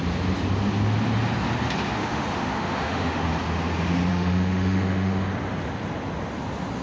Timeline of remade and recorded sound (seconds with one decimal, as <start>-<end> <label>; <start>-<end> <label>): 0.0-2.0 recorded; 2.0-3.2 remade; 3.2-4.1 recorded; 4.1-5.3 remade; 5.3-6.8 recorded